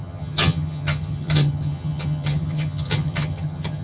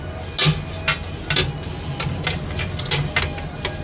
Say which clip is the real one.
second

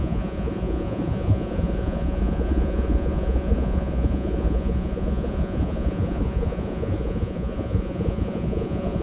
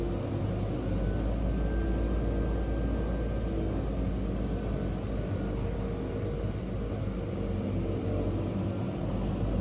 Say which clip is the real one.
second